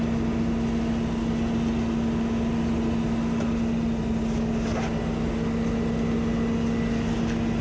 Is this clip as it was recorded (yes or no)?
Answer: yes